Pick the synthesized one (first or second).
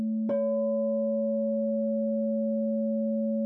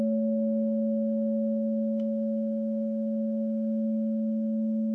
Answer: second